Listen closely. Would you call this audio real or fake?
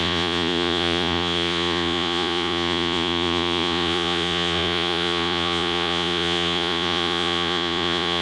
fake